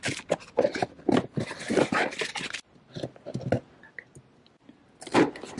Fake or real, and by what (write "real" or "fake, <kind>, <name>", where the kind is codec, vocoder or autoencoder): real